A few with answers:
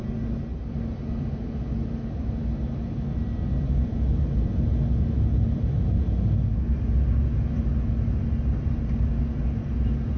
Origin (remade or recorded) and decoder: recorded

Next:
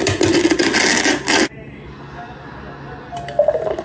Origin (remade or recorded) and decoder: recorded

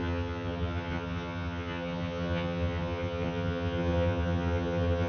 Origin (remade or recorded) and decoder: remade, vocoder, HiFi-GAN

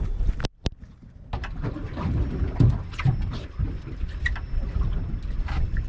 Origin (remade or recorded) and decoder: recorded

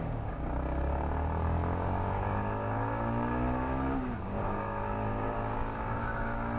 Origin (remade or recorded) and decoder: remade, codec, DAC